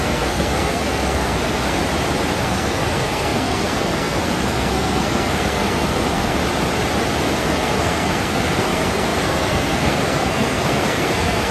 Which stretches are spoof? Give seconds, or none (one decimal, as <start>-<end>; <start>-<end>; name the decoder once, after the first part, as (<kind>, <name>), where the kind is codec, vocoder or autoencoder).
0.0-1.8 (codec, SNAC); 2.4-6.4; 7.3-11.5